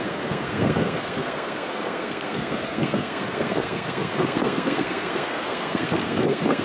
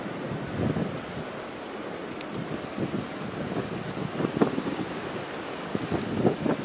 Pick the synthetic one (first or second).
first